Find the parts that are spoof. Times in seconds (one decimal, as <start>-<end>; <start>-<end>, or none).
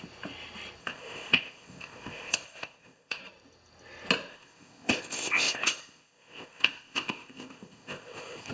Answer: 0.8-3.2; 4.3-8.5